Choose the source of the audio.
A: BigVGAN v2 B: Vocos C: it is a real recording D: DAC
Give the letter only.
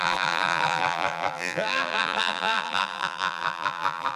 A